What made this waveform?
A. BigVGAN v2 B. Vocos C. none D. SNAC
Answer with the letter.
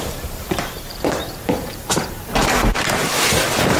A